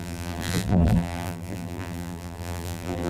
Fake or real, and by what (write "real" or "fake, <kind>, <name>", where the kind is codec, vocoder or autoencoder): fake, vocoder, BigVGAN v2